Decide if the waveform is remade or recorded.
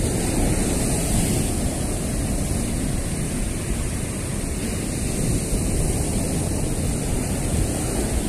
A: recorded